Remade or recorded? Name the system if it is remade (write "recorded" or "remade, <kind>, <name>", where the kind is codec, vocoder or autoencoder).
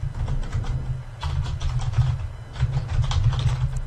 recorded